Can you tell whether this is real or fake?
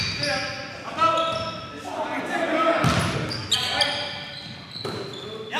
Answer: real